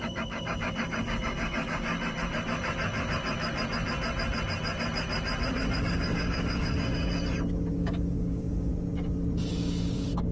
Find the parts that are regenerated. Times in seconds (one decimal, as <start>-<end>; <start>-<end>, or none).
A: 0.0-1.9; 5.8-7.1; 7.7-8.7; 9.5-10.3